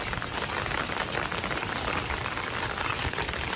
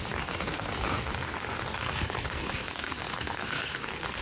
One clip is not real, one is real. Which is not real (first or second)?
second